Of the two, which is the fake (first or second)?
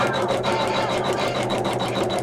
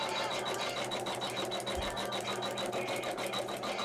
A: first